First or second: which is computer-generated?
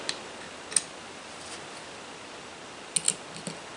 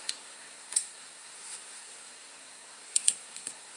second